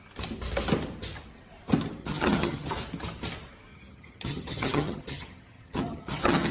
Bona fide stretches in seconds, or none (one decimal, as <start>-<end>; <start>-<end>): 0.0-2.0; 2.7-3.7